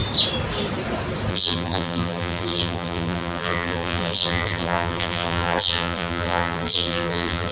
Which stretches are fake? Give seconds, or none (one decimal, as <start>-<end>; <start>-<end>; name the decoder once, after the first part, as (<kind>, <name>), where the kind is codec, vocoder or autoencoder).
1.3-7.5 (vocoder, BigVGAN v2)